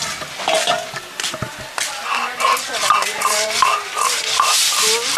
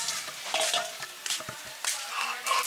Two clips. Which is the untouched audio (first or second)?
first